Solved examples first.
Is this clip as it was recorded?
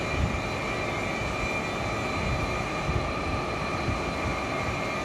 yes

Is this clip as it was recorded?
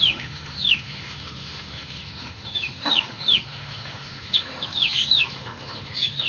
no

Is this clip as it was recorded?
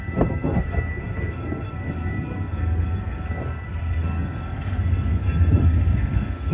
no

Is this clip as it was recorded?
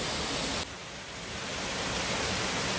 yes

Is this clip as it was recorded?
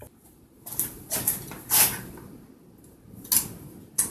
yes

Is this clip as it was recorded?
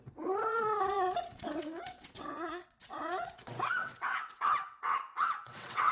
no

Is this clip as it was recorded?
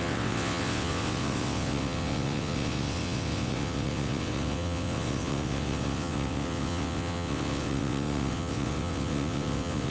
no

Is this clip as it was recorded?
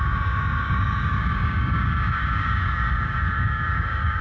no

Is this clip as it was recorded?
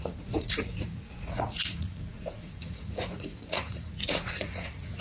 no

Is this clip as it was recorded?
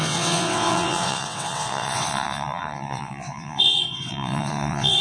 no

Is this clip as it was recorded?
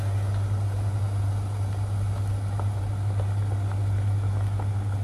yes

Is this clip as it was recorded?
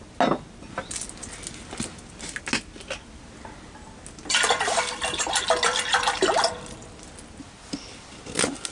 yes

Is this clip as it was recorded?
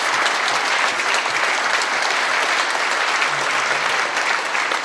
yes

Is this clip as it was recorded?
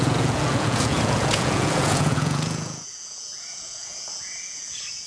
no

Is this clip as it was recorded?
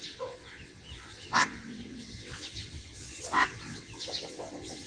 no